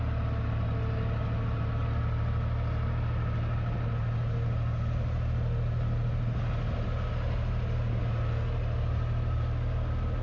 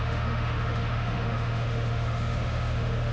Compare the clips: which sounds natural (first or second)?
first